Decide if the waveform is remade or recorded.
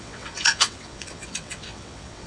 remade